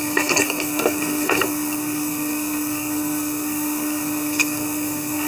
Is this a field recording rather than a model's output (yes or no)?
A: no